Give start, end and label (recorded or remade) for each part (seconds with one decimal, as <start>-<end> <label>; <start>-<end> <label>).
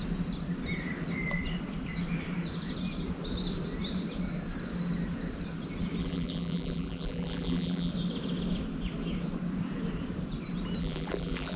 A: 0.0-6.0 recorded; 6.0-7.9 remade; 7.9-10.8 recorded; 10.8-11.6 remade